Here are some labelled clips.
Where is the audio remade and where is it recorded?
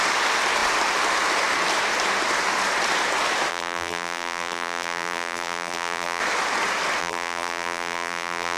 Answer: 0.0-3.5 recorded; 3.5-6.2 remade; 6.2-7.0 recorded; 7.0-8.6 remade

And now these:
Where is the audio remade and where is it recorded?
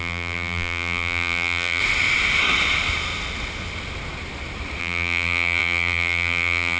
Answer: 0.0-1.8 remade; 1.8-4.8 recorded; 4.8-6.8 remade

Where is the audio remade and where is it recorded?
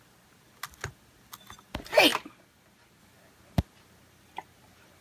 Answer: 0.0-5.0 recorded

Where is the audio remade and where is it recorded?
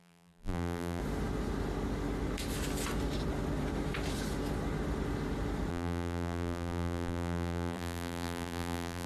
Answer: 0.0-1.0 remade; 1.0-5.7 recorded; 5.7-9.1 remade